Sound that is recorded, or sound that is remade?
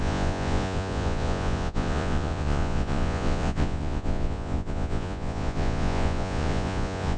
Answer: remade